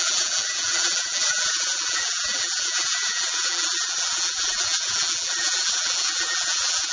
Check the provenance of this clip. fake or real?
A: fake